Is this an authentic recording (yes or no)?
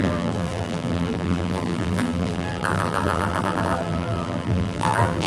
no